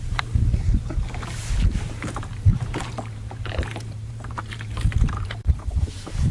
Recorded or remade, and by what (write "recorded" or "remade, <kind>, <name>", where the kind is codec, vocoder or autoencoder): remade, vocoder, BigVGAN v2